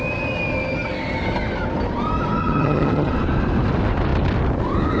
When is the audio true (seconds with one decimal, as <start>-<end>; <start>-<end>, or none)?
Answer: 0.0-2.4; 3.1-5.0